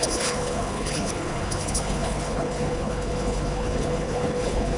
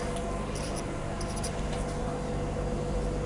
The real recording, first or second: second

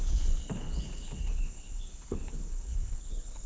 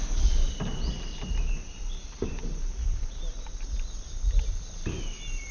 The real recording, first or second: second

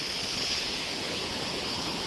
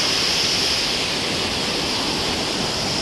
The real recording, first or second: second